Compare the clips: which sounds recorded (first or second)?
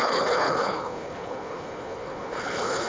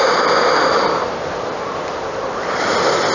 second